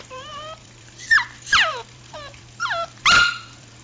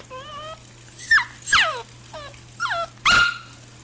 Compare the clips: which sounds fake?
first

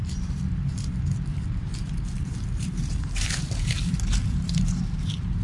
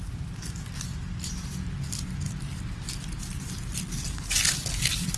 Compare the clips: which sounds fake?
first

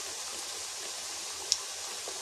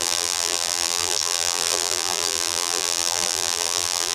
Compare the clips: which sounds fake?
second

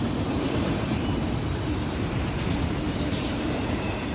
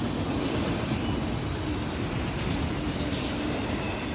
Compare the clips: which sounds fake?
first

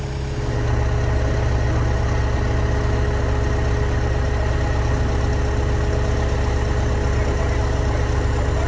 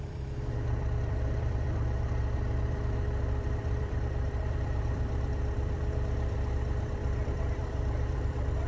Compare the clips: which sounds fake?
second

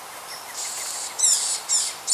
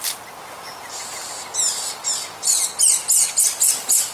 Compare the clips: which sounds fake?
first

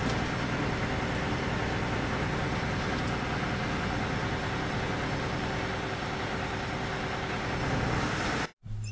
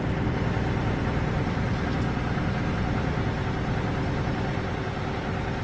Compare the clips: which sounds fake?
second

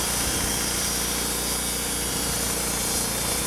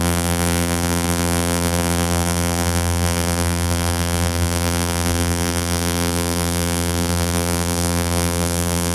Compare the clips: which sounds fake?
second